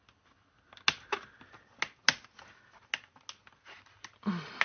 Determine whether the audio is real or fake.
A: real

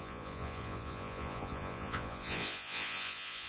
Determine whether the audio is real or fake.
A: fake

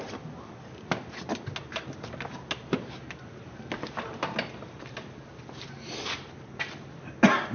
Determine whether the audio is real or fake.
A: real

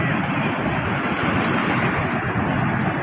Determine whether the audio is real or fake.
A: real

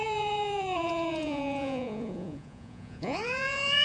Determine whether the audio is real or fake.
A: fake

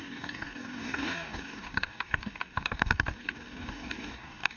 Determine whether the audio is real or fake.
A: fake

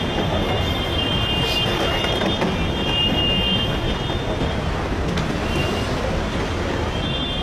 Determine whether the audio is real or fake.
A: real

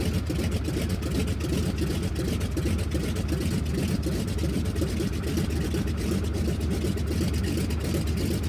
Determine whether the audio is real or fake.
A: real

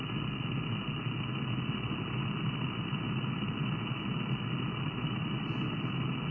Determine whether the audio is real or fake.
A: real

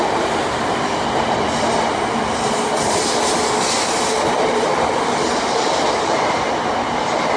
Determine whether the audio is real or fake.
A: real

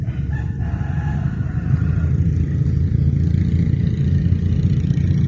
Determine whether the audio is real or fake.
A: real